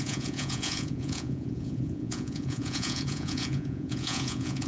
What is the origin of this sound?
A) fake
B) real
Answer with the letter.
A